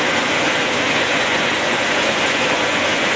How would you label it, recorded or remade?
remade